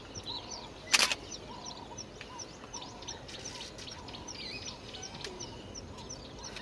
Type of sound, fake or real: real